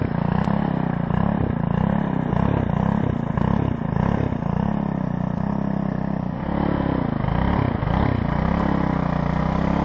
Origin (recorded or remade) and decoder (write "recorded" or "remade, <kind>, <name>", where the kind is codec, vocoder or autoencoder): recorded